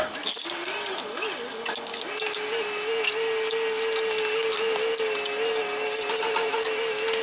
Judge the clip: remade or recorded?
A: recorded